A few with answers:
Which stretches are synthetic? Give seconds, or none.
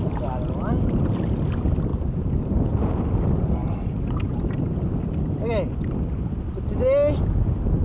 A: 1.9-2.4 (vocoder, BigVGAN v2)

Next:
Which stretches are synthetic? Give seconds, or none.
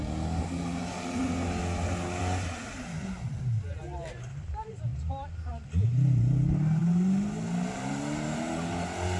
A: none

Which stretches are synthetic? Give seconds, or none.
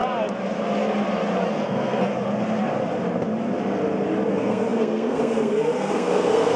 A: 1.5-2.1 (codec, SNAC); 4.3-6.6